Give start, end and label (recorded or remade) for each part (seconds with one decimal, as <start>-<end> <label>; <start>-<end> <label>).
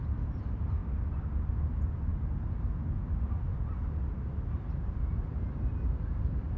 0.0-6.6 recorded